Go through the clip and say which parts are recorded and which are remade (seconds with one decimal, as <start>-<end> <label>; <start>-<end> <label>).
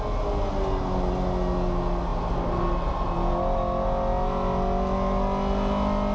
0.0-6.1 recorded